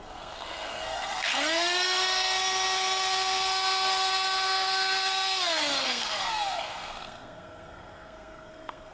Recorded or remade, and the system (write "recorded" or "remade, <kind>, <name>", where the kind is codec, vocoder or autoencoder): remade, codec, SNAC